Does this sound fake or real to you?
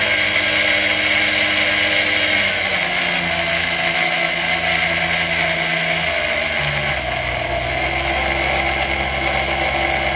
real